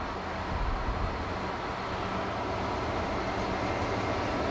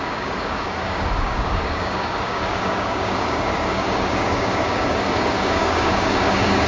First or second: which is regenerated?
second